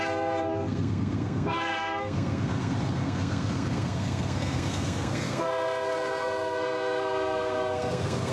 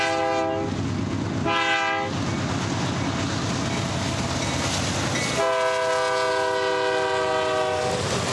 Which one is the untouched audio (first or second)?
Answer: second